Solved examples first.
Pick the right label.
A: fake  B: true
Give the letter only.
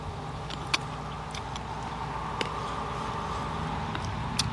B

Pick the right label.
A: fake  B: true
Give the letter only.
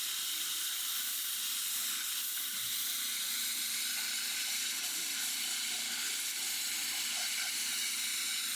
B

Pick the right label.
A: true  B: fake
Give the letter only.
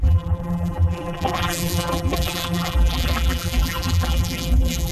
B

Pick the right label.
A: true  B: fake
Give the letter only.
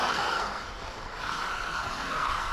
B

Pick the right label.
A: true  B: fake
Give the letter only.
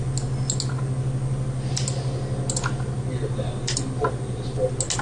A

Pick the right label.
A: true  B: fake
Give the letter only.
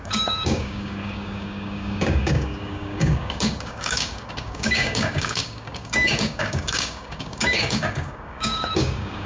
B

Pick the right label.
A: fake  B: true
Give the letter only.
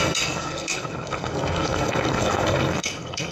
A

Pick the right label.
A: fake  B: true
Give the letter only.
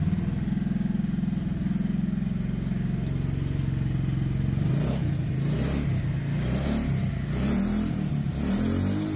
B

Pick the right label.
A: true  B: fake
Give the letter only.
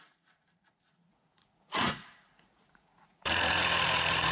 B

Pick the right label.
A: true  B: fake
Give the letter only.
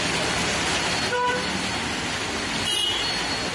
B